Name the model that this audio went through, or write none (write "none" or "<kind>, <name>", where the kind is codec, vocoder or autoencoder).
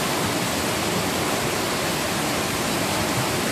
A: none